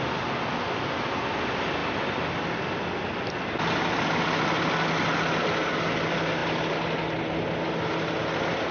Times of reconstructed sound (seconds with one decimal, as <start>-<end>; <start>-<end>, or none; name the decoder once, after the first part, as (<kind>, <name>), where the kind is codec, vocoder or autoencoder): none